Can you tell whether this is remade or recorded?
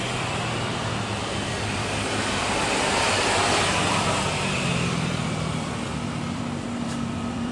remade